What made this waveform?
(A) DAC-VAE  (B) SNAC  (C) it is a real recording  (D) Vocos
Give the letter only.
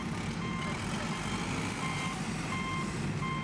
C